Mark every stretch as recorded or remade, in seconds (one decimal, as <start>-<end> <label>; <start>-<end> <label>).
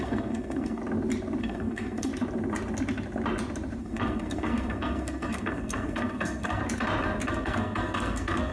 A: 0.0-0.8 remade; 0.8-1.4 recorded; 1.4-2.1 remade; 2.1-3.8 recorded; 3.8-6.6 remade; 6.6-7.3 recorded; 7.3-8.5 remade